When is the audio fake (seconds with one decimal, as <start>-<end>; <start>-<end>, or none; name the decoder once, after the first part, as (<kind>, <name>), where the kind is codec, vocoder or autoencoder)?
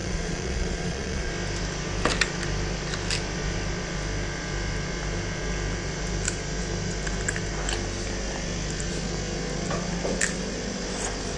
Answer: 0.0-1.3 (vocoder, Vocos)